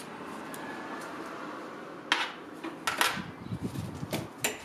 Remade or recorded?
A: recorded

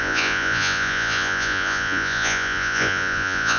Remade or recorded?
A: remade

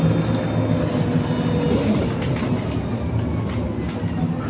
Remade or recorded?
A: recorded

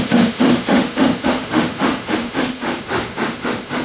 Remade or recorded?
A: remade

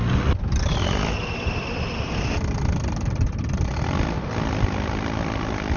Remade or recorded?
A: remade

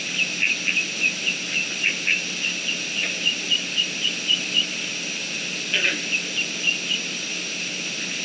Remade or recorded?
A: recorded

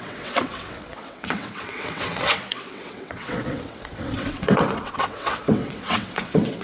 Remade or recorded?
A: remade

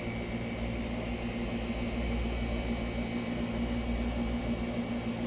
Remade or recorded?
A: recorded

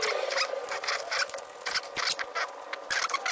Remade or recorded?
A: recorded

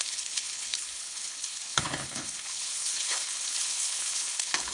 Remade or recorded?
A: remade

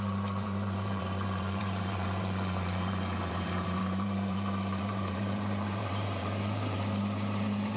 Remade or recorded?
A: remade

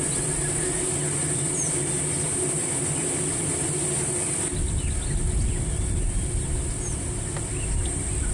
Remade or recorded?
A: recorded